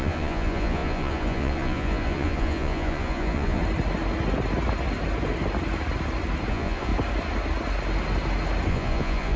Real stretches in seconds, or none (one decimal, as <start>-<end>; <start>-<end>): 3.6-6.5; 6.9-8.7